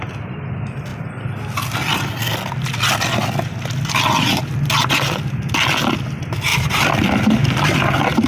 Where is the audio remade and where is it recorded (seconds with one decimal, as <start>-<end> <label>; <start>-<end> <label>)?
0.0-6.5 recorded; 6.5-8.3 remade